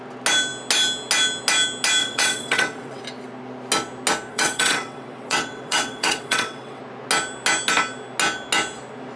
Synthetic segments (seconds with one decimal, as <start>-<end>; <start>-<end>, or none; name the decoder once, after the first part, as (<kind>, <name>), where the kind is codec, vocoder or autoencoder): 2.0-3.0 (vocoder, WaveNeXt); 4.3-6.8

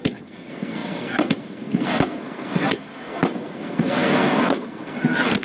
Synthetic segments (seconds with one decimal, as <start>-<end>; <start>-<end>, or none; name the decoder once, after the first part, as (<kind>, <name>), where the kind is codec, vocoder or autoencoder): 0.0-5.4 (codec, SNAC)